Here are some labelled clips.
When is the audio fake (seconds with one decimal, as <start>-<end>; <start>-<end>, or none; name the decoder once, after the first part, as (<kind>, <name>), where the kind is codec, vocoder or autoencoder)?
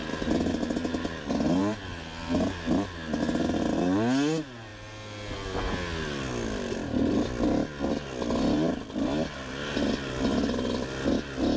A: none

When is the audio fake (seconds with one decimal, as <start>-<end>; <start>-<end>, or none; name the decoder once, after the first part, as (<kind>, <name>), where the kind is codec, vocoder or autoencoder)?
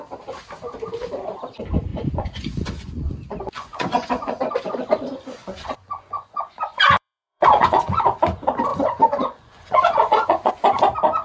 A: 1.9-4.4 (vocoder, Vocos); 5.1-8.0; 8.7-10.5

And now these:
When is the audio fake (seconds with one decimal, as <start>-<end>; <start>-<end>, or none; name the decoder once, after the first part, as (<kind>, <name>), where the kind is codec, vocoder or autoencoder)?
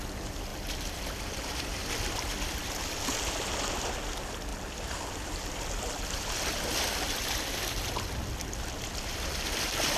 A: none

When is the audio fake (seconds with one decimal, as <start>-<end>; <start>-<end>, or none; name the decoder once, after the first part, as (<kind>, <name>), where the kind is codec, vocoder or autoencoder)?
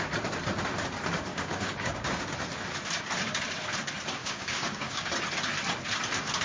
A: 1.3-2.2 (codec, DAC); 4.2-5.1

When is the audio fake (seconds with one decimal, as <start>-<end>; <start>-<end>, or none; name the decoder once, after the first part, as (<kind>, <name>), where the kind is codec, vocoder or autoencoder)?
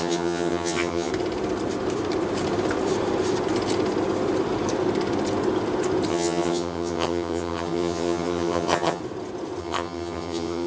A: 0.0-1.1 (vocoder, HiFi-GAN); 6.1-9.0; 9.6-10.7